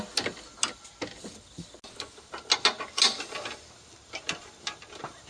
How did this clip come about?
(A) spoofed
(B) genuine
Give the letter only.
B